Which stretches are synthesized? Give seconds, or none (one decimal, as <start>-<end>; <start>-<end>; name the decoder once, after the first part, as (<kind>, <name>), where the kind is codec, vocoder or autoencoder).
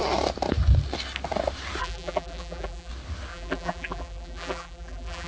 1.8-2.9 (vocoder, BigVGAN v2); 3.3-5.3